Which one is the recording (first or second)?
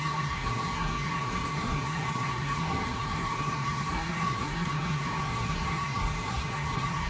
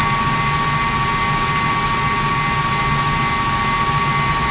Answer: second